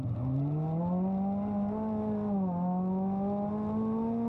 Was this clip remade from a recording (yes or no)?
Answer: no